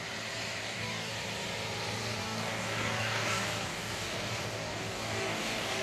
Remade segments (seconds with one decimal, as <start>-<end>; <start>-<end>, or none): 0.6-1.1; 2.2-5.8